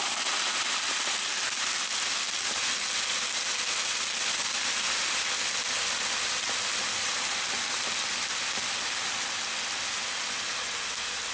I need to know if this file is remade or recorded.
recorded